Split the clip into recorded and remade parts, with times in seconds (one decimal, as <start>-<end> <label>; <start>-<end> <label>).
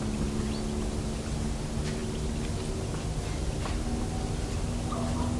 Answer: 0.0-5.4 recorded